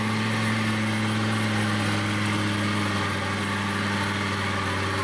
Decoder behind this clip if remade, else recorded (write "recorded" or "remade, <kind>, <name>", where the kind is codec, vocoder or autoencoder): recorded